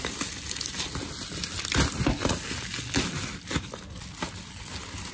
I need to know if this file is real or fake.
real